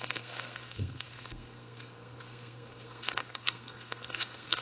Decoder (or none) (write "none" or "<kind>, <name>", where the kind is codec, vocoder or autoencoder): codec, SNAC